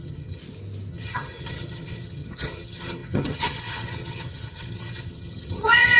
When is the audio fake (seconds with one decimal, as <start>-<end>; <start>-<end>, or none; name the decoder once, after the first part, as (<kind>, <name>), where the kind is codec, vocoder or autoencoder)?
0.0-0.4 (vocoder, HiFi-GAN); 0.9-6.0